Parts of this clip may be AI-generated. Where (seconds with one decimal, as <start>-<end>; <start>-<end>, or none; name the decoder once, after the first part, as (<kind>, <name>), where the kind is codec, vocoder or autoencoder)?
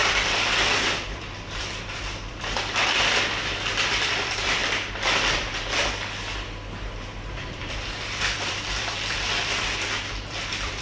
0.0-4.6 (vocoder, BigVGAN v2); 7.6-10.8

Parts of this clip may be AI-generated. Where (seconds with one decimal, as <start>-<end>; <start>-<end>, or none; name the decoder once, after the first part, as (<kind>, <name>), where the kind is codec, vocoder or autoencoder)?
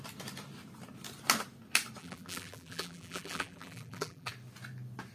2.0-4.3 (vocoder, BigVGAN v2)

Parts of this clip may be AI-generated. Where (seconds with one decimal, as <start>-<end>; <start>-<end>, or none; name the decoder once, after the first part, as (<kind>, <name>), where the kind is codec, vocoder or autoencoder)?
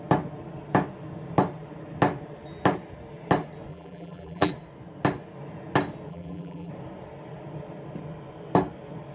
3.7-4.5 (vocoder, BigVGAN v2); 6.1-6.7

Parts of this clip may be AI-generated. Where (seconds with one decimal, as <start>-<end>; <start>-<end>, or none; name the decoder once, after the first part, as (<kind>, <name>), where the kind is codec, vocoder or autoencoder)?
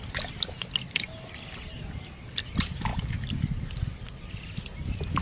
none